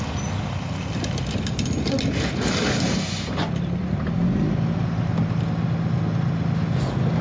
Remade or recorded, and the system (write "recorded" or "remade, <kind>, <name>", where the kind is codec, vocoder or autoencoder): recorded